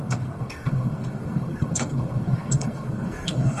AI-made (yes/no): yes